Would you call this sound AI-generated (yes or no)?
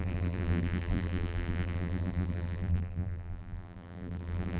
yes